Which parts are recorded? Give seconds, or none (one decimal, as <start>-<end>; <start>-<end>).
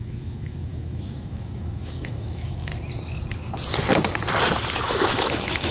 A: 2.7-4.8